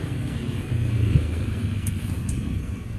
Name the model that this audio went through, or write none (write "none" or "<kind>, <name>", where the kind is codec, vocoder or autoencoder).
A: codec, SNAC